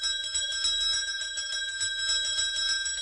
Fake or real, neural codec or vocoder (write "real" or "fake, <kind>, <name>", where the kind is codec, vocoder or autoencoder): real